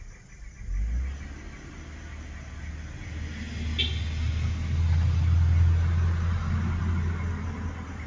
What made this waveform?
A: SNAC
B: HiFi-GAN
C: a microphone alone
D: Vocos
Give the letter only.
C